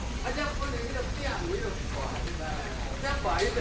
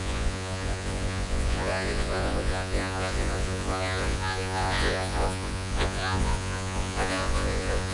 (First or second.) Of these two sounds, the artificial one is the second